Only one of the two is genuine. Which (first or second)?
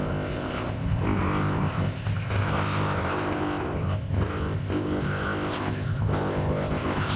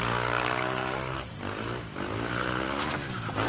second